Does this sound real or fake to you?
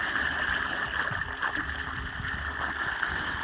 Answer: real